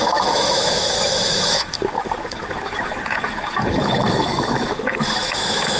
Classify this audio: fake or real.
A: fake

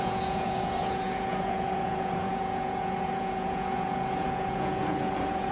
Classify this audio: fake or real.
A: fake